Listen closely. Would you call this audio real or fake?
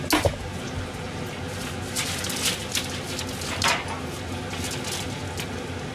real